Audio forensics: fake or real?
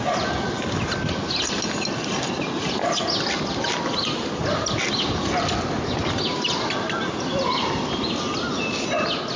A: real